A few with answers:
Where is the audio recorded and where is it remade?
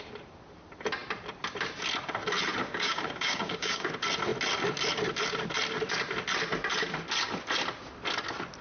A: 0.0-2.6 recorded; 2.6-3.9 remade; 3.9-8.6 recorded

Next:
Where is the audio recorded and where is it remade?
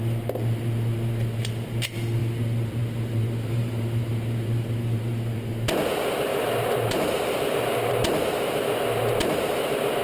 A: 0.0-2.2 recorded; 2.2-5.5 remade; 5.5-6.3 recorded; 6.3-7.9 remade; 7.9-10.0 recorded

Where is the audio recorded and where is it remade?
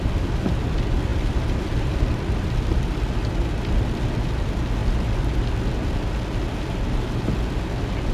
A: 0.0-1.1 recorded; 1.1-2.2 remade; 2.2-8.1 recorded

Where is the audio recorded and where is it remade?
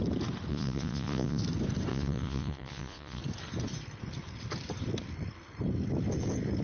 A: 0.0-0.5 recorded; 0.5-1.4 remade; 1.4-1.9 recorded; 1.9-3.2 remade; 3.2-6.6 recorded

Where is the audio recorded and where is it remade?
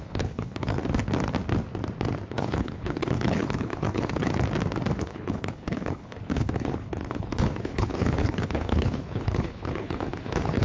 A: 0.0-0.8 remade; 0.8-2.3 recorded; 2.3-4.3 remade; 4.3-5.0 recorded; 5.0-10.6 remade